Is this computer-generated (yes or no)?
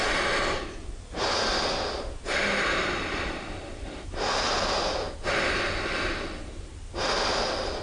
no